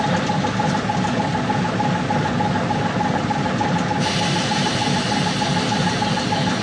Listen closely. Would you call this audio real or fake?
real